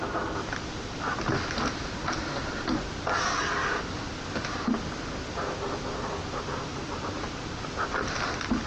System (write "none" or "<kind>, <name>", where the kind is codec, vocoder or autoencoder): none